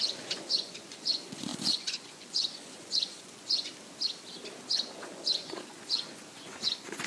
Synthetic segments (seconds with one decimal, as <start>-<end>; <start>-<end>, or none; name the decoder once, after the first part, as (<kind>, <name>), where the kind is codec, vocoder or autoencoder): 0.0-3.7 (vocoder, Vocos); 4.7-7.1